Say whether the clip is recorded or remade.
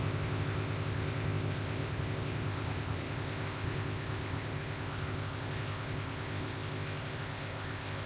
remade